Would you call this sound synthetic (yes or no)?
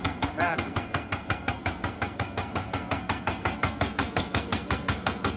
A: yes